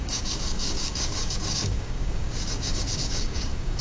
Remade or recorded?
remade